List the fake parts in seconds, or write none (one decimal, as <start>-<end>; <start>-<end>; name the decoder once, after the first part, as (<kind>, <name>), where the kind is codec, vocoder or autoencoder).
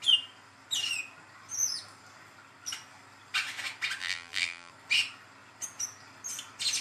4.0-4.7 (vocoder, BigVGAN v2)